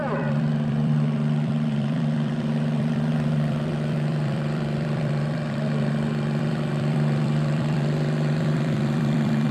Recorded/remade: remade